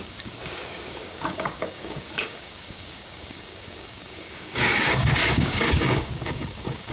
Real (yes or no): no